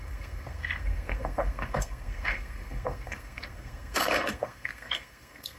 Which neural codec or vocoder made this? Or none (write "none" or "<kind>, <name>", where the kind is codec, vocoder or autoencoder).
codec, SNAC